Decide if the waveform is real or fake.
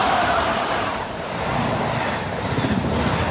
fake